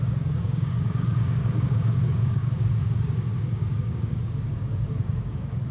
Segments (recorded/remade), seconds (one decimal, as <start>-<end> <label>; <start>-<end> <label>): 0.0-5.7 remade